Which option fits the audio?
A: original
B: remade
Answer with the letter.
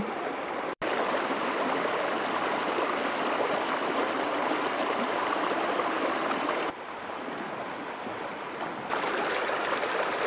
A